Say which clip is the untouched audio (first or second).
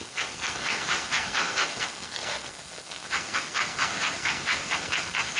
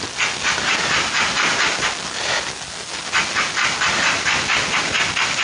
second